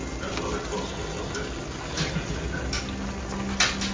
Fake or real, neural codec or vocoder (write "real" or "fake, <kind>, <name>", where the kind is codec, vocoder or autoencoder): real